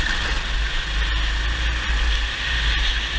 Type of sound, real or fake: real